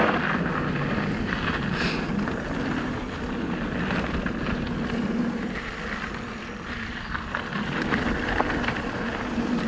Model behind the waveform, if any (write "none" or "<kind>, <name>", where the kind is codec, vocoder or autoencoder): none